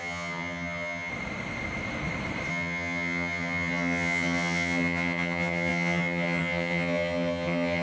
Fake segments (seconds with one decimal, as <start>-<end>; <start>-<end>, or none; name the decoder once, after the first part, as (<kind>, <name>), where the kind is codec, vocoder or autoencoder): 0.0-1.1 (vocoder, HiFi-GAN); 2.5-7.8